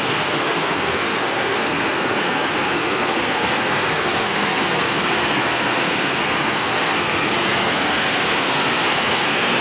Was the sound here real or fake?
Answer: fake